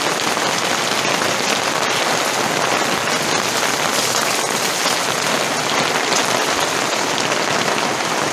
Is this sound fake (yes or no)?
no